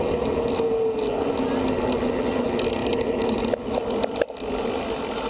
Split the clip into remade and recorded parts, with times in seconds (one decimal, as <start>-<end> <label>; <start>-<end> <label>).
0.0-2.8 recorded; 2.8-3.4 remade; 3.4-5.3 recorded